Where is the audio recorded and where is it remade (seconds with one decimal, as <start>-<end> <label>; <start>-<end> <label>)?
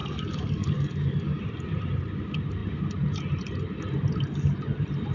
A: 0.0-1.4 remade; 1.4-5.1 recorded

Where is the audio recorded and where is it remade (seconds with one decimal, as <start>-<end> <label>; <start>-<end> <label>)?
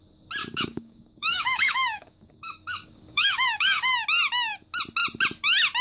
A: 0.0-0.4 recorded; 0.4-3.9 remade; 3.9-5.8 recorded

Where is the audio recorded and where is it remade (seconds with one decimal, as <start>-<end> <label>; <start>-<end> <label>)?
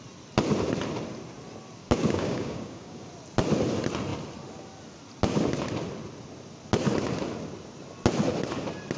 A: 0.0-1.8 recorded; 1.8-3.1 remade; 3.1-9.0 recorded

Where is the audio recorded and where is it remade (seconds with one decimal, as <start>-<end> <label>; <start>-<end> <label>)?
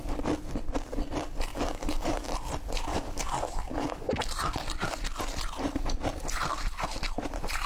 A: 0.0-1.5 recorded; 1.5-2.3 remade; 2.3-2.9 recorded; 2.9-4.1 remade; 4.1-7.7 recorded